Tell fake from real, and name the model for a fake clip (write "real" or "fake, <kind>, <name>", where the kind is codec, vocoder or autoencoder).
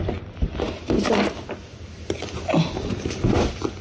real